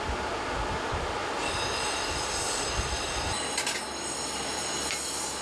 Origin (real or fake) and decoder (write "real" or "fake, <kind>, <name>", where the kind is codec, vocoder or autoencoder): real